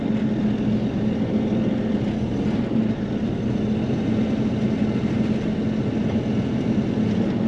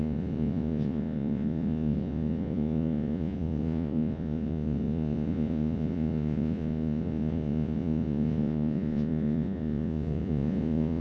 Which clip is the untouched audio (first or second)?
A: first